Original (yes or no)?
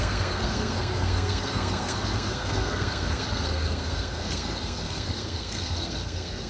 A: no